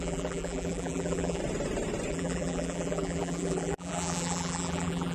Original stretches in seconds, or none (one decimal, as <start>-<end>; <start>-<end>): 1.4-2.1